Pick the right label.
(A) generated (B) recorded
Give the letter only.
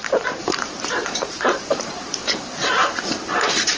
A